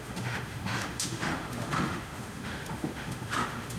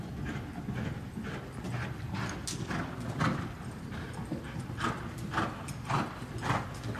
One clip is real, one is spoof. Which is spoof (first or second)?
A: first